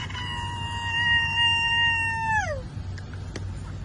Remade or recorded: recorded